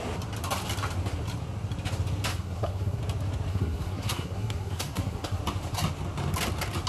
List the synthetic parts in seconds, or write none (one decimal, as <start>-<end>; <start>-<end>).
2.3-3.0; 3.5-5.4